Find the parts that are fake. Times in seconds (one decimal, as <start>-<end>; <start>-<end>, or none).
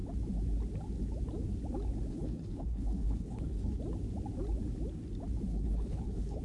2.1-3.8; 5.5-6.4